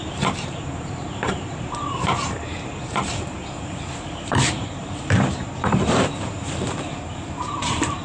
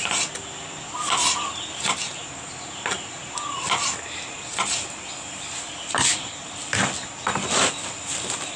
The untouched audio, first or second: second